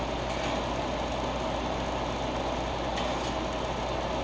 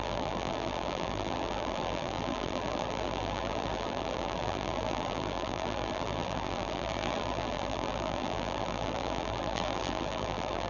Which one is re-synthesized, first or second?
second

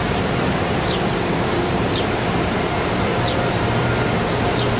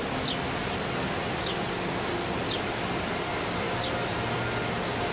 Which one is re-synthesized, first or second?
first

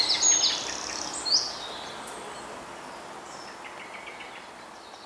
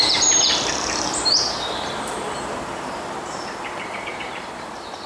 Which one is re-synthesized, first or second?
second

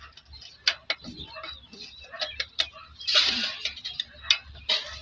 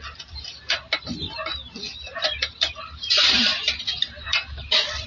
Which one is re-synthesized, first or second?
second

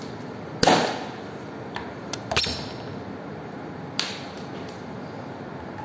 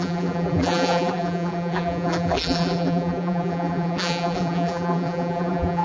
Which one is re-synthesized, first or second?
second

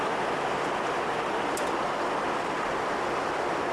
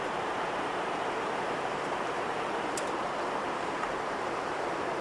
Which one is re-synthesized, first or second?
second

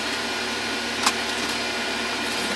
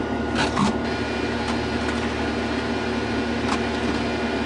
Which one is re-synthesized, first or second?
first